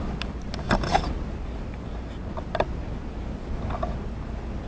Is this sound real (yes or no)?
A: yes